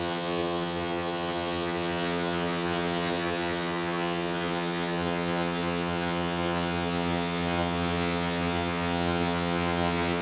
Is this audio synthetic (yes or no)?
yes